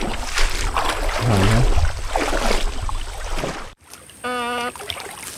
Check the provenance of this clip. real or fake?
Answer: real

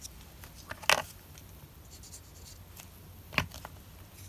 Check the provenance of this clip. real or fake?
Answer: real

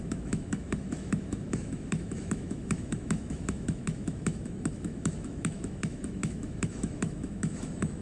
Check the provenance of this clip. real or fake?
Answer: fake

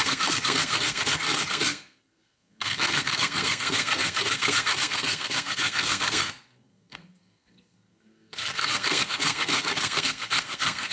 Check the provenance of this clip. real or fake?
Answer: fake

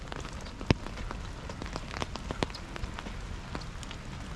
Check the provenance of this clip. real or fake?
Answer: real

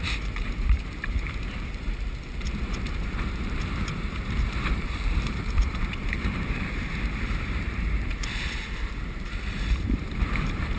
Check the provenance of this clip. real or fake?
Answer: fake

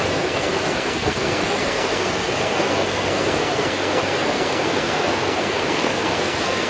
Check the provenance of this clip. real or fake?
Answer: fake